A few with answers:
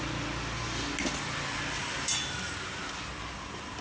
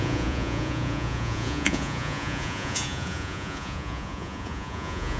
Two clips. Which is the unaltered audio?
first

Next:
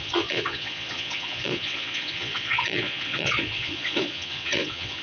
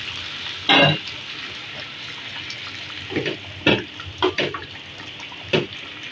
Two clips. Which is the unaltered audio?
second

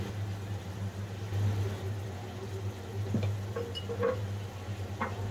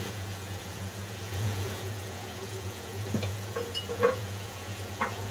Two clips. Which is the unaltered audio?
first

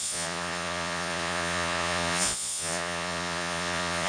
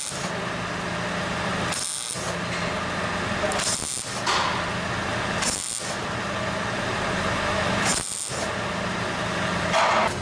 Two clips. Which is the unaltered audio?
second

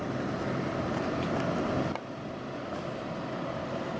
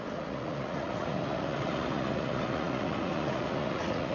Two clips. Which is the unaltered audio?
first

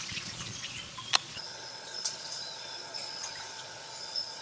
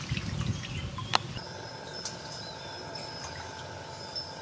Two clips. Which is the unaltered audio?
second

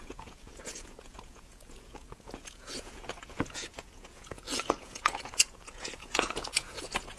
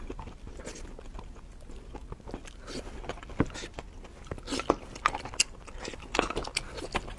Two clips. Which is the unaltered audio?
second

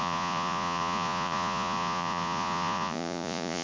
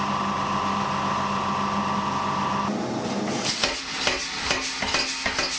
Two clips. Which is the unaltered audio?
second